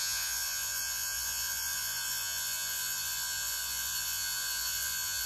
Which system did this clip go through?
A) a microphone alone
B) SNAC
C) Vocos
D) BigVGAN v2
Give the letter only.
C